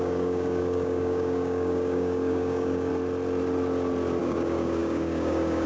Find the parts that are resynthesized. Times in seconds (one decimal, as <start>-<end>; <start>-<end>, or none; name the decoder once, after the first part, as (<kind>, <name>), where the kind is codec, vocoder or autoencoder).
0.0-2.9 (codec, DAC); 4.2-5.7

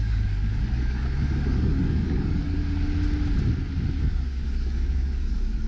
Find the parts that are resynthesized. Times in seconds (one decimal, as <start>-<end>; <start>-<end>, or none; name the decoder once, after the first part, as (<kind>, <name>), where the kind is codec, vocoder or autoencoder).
0.0-2.6 (codec, DAC); 3.9-5.7

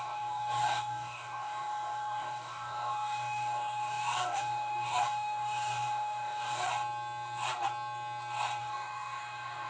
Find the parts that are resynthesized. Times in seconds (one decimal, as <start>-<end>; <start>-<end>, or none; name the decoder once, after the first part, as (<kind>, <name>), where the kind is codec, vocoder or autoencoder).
0.0-6.7 (codec, DAC); 8.6-9.7

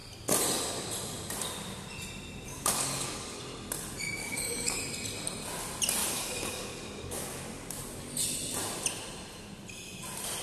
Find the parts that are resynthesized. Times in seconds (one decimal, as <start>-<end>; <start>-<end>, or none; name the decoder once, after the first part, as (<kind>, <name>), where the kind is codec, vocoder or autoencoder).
2.5-3.4 (codec, DAC); 4.2-4.8; 6.0-7.8

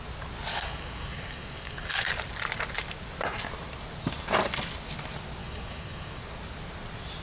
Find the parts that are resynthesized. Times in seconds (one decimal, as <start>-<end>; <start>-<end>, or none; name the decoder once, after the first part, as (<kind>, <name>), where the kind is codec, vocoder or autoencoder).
0.5-2.0 (codec, DAC); 5.4-6.2

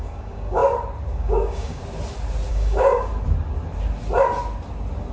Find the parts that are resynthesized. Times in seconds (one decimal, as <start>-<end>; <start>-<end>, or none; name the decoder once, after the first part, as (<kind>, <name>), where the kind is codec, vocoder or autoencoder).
0.0-0.6 (codec, DAC); 1.1-1.8; 2.5-3.1

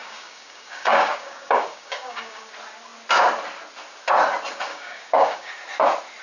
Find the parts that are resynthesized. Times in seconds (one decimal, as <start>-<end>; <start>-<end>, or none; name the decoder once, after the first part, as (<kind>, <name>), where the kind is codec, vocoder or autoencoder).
0.0-2.5 (codec, DAC); 4.7-5.5